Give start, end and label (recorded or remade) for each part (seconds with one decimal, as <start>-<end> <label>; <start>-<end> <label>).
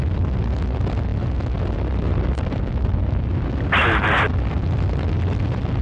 0.0-1.1 recorded; 1.1-2.6 remade; 2.6-4.3 recorded; 4.3-5.8 remade